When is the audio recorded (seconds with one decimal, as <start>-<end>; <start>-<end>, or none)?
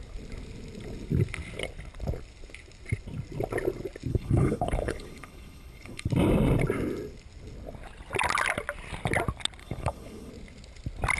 0.0-4.1; 6.1-9.6; 10.3-11.2